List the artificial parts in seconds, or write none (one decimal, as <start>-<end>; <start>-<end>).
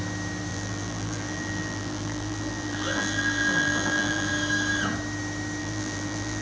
0.5-4.3; 5.6-6.4